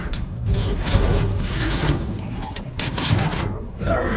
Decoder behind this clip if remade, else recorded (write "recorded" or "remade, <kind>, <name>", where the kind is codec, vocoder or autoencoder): remade, codec, SNAC